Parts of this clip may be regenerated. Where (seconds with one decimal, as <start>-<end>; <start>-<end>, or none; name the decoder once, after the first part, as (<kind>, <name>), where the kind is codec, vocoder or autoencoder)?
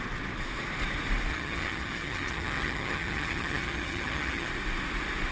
1.3-4.5 (vocoder, HiFi-GAN)